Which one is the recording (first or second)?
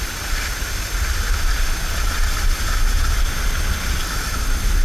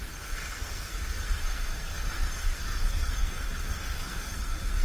first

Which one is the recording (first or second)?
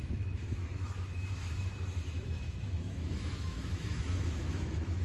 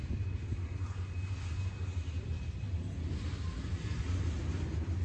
second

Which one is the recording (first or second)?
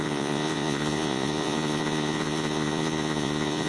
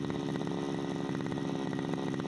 second